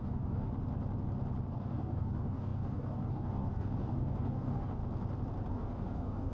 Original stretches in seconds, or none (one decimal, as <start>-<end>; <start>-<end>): 0.5-1.5; 4.8-5.5